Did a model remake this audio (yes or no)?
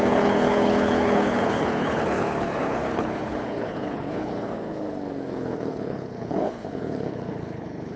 yes